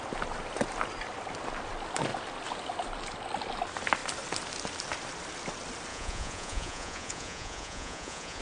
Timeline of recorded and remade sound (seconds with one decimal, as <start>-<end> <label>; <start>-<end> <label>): 0.0-5.9 recorded; 5.9-8.4 remade